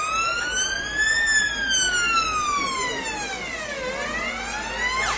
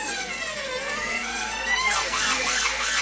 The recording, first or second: first